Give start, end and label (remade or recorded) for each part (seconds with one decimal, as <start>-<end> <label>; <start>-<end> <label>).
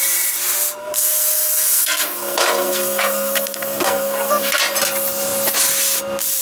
0.0-0.8 recorded; 0.8-4.6 remade; 4.6-6.4 recorded